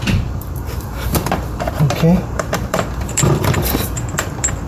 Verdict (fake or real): fake